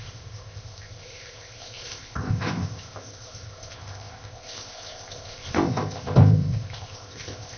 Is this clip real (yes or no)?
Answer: no